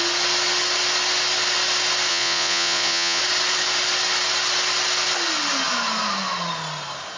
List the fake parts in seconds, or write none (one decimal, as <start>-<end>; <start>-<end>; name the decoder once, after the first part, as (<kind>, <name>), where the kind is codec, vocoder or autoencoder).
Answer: 2.1-3.2 (vocoder, Vocos)